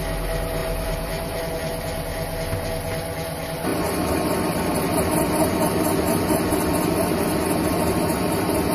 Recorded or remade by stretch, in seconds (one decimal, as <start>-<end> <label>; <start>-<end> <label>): 0.0-0.6 recorded; 0.6-1.5 remade; 1.5-3.7 recorded; 3.7-5.1 remade; 5.1-8.7 recorded